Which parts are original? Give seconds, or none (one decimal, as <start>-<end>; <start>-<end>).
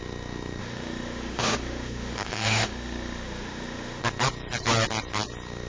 0.0-0.6; 4.0-5.7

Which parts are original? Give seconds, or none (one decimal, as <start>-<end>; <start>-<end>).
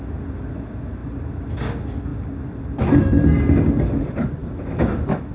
0.0-4.4